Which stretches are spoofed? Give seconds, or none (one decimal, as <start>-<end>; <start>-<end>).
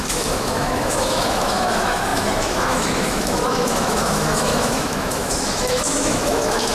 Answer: 0.0-6.7